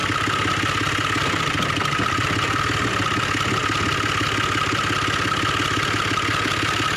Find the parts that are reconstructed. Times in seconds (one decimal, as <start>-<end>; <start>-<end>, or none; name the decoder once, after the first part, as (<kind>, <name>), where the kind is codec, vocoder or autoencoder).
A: none